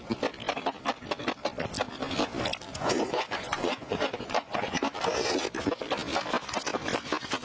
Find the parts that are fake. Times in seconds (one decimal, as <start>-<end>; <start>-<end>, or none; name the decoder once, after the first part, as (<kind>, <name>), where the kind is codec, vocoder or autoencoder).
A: 2.7-4.8 (vocoder, Vocos)